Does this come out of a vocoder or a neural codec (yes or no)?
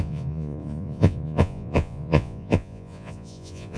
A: yes